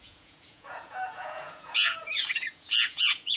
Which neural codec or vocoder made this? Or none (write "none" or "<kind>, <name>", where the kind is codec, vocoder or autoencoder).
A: vocoder, Vocos